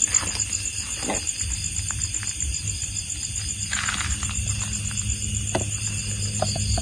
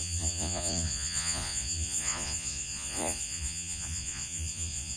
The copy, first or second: second